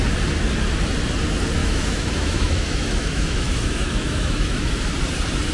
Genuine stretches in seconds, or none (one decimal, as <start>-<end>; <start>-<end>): 0.0-1.6; 4.9-5.5